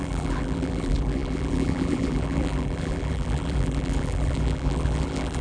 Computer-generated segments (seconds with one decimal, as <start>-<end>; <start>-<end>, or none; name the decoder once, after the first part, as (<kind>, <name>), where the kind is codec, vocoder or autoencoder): 0.0-5.4 (vocoder, BigVGAN v2)